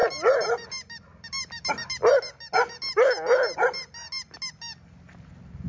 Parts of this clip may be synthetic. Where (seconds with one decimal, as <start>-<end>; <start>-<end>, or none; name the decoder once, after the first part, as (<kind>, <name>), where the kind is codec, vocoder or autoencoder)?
none